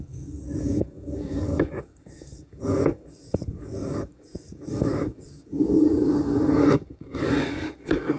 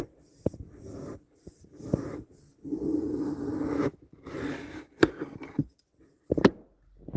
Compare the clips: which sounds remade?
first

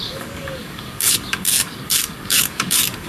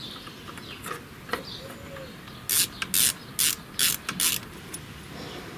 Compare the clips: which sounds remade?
first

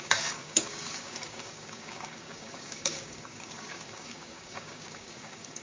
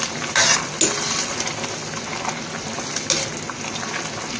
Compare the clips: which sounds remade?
first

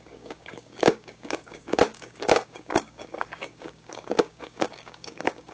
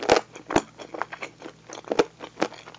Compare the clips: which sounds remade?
first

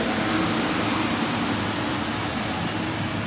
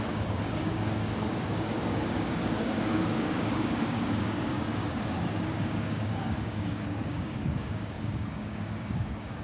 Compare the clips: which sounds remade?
second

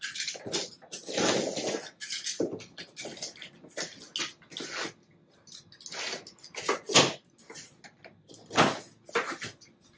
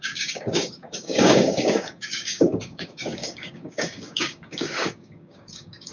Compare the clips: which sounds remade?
second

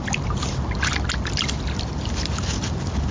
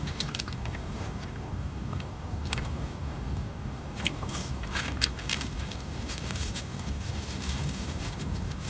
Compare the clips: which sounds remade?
second